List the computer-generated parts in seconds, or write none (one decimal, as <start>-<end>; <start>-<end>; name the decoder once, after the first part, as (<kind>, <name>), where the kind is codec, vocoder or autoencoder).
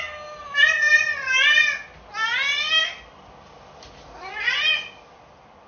0.4-1.6 (vocoder, BigVGAN v2)